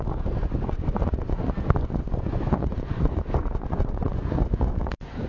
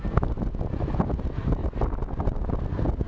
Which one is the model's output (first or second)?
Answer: first